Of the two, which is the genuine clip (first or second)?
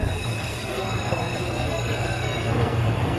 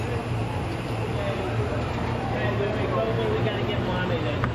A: second